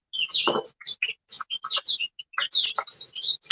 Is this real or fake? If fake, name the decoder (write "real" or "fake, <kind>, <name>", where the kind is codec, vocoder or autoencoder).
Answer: real